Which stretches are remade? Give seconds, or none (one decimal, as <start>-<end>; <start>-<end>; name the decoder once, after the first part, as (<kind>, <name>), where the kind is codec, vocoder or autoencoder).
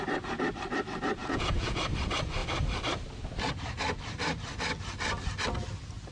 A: 1.2-1.8 (vocoder, Vocos)